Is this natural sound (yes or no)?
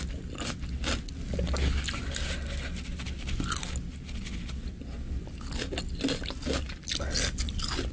yes